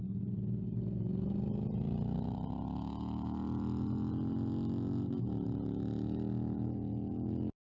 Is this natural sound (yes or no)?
yes